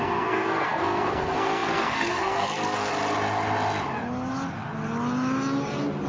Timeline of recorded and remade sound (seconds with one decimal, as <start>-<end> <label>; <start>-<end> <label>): 0.0-2.9 remade; 2.9-6.1 recorded